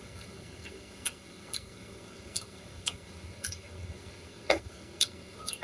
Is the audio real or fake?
fake